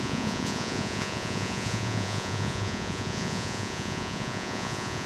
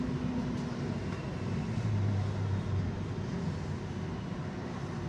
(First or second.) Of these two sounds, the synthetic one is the first